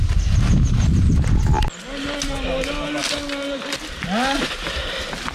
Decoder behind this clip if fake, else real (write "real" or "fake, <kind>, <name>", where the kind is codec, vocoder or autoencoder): real